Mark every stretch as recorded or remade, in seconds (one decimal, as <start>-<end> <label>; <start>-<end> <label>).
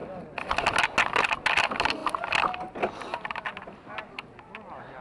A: 0.0-5.0 recorded